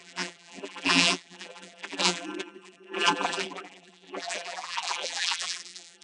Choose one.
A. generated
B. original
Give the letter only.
A